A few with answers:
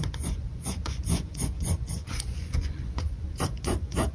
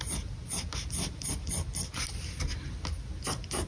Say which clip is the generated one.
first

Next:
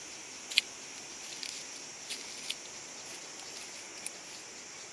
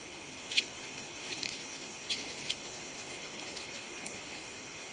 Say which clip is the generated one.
second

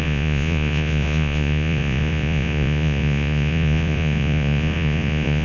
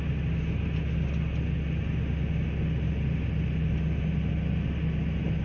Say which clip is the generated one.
first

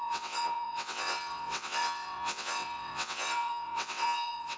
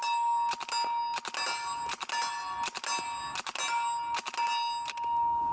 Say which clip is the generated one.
first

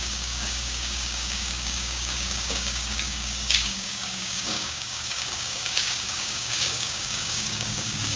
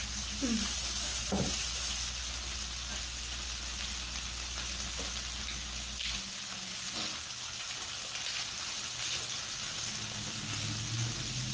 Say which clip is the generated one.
first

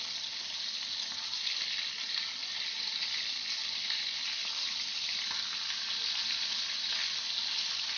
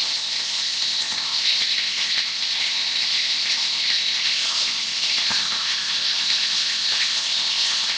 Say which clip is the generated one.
second